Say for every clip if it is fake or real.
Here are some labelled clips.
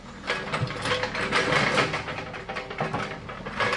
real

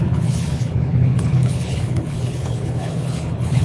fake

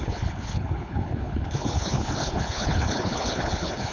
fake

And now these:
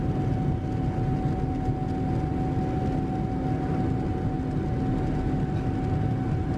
real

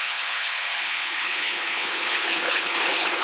fake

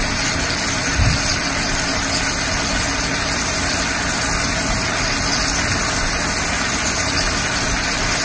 real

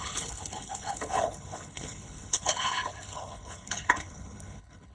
fake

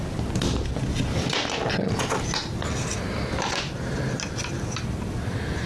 real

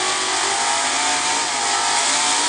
real